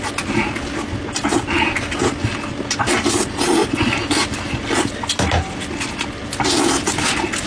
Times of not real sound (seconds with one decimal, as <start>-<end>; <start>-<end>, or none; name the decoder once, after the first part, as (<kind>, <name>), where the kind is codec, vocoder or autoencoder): none